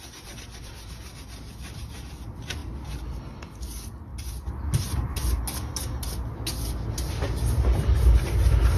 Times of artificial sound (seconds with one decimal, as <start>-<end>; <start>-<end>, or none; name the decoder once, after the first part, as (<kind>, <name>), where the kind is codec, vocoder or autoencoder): none